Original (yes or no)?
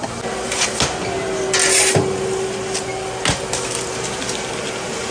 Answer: yes